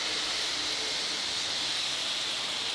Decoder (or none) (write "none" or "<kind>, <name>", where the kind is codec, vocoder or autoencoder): vocoder, BigVGAN v2